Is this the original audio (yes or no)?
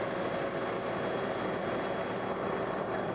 yes